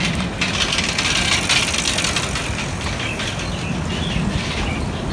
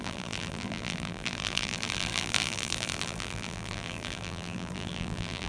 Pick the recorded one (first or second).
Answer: first